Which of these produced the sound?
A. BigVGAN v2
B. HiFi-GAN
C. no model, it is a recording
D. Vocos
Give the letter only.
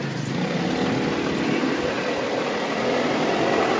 C